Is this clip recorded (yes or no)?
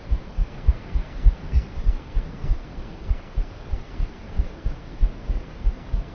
no